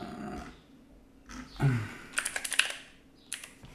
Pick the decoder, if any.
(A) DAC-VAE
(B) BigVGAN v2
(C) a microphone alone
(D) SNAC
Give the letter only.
C